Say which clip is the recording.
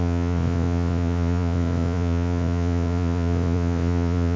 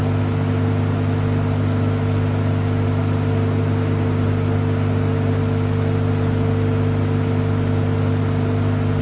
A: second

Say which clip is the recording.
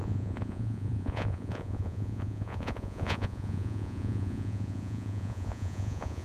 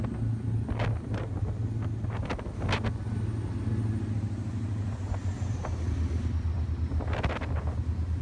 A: second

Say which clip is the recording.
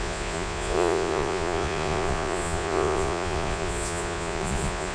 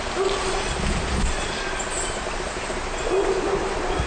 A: second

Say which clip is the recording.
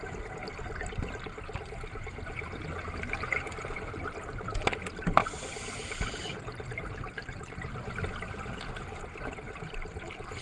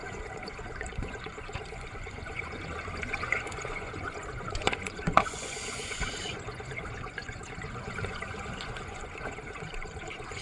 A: first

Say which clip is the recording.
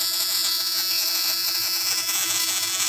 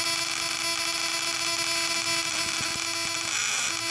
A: second